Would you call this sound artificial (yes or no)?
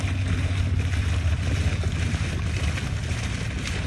no